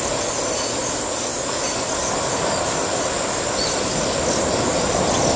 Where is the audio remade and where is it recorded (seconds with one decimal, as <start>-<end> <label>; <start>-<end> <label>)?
0.0-5.4 recorded